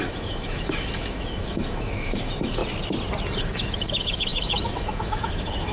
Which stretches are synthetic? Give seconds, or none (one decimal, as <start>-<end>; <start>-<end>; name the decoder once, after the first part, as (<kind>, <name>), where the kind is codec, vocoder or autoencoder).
0.0-2.6 (autoencoder, DAC-VAE); 3.4-5.7